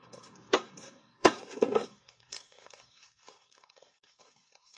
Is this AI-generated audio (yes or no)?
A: yes